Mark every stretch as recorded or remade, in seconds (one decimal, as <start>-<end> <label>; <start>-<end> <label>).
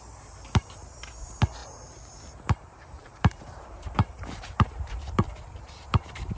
0.0-6.4 remade